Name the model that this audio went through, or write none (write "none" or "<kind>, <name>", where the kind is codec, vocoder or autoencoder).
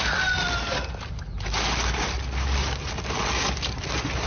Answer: none